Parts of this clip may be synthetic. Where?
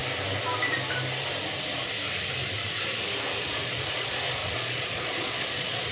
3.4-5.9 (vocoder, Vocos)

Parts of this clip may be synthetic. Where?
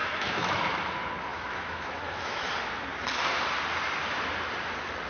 0.0-0.6 (autoencoder, DAC-VAE); 1.3-2.5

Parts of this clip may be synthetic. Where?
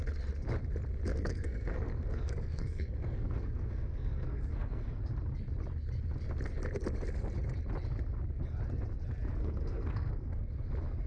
1.1-5.0 (codec, SNAC); 9.4-10.7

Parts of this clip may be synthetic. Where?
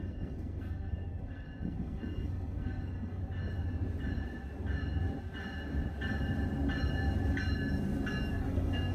0.0-3.2 (codec, SNAC); 8.3-8.9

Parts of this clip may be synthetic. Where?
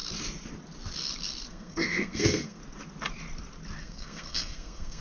1.5-2.6 (codec, SNAC); 3.8-5.0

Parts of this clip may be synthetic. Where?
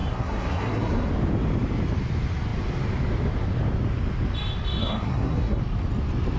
0.0-1.1 (codec, SNAC); 4.8-5.6